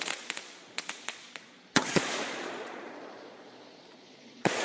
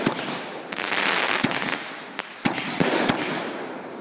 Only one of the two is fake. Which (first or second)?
first